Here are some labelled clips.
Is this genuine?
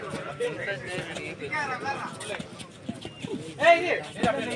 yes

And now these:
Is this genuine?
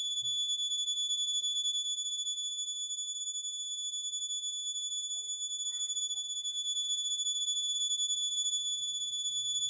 no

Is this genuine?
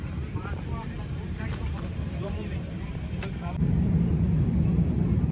no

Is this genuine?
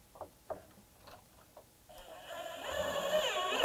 yes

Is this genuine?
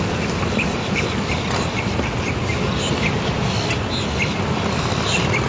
yes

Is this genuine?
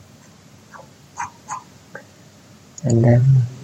no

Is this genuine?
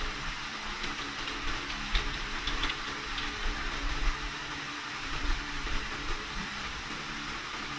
no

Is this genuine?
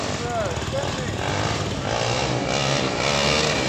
yes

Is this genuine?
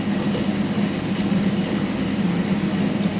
yes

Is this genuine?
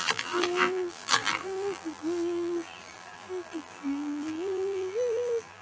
no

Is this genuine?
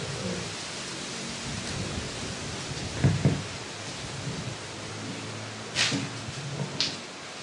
yes